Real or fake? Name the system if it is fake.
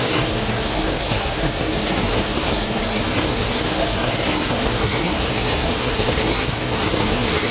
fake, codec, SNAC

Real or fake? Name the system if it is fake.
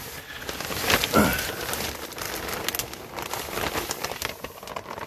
real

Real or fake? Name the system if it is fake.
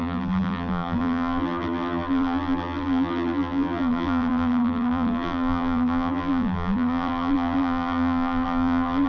fake, vocoder, BigVGAN v2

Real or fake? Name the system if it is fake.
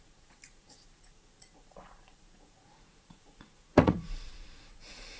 fake, vocoder, Vocos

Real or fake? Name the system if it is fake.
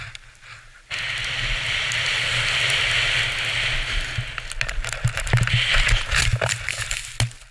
real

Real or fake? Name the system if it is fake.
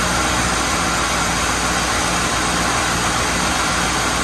real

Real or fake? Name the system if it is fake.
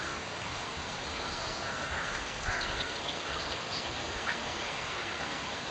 fake, codec, SNAC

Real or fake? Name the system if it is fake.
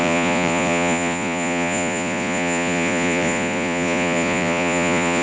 fake, vocoder, Vocos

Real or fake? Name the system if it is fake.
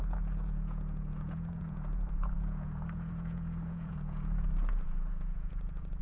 fake, vocoder, Vocos